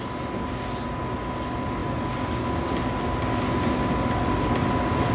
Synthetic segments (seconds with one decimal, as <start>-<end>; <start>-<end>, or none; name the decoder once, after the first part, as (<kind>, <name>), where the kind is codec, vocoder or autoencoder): none